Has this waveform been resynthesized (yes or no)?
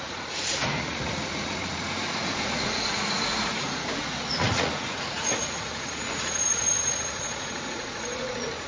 yes